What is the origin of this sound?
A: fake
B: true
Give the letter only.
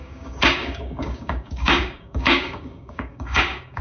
A